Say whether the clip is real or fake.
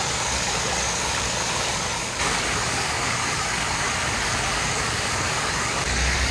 fake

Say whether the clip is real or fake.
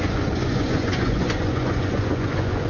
fake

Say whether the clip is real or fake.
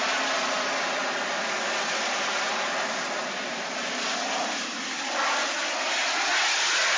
real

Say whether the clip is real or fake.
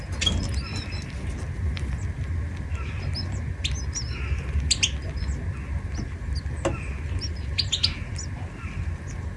real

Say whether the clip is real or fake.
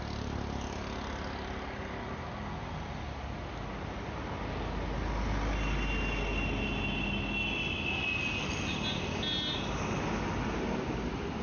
real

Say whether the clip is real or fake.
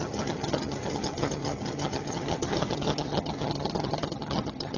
fake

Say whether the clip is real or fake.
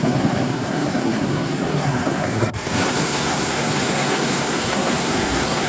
fake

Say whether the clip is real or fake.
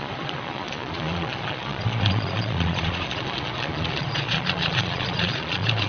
fake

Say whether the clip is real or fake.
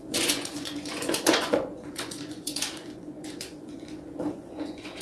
fake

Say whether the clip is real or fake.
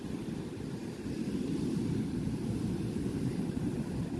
real